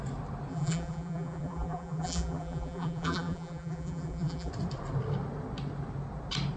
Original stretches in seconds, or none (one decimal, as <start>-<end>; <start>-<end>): 0.0-0.5; 4.5-6.6

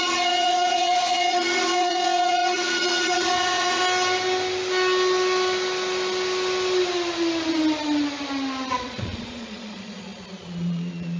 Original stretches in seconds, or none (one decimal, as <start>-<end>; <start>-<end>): 3.8-8.7

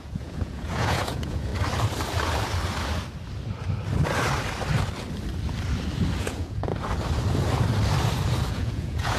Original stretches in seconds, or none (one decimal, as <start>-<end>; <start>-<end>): 1.5-6.2; 6.7-8.5

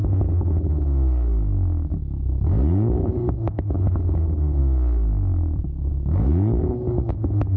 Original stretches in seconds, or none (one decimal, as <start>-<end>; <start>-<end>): 0.0-0.6

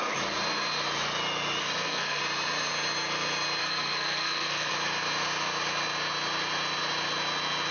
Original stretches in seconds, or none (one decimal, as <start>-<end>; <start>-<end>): 0.0-1.6; 2.2-3.6; 4.7-7.7

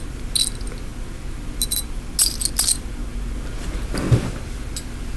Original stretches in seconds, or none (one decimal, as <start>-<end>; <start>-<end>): 0.0-5.2

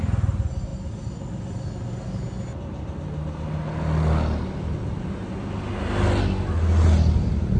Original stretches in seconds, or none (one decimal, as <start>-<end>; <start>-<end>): 0.0-7.6

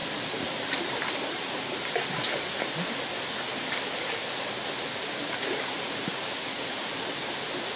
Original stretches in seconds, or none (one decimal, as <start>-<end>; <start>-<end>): 0.0-7.8